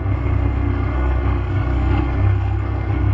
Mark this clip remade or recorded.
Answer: remade